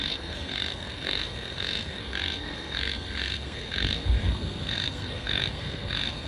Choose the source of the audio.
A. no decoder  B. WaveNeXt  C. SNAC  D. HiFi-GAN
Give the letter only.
C